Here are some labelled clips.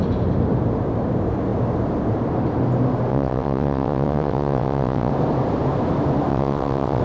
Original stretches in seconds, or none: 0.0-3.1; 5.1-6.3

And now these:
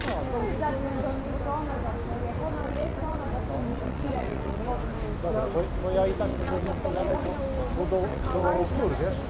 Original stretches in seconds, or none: 0.0-2.6; 3.2-3.7; 4.6-6.3; 7.3-8.1; 8.8-9.3

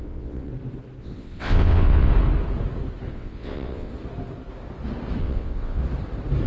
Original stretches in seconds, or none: 0.5-1.0; 2.1-3.1; 3.9-5.2; 5.8-6.5

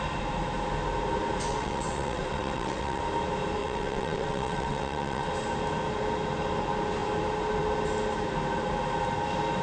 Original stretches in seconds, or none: 0.0-1.5; 3.0-3.6; 5.3-9.6